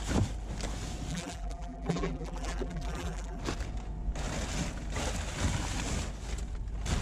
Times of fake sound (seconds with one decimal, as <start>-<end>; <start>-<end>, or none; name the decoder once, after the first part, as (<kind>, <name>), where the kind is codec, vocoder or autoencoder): 1.1-3.4 (vocoder, BigVGAN v2)